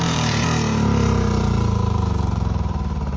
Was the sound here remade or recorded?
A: remade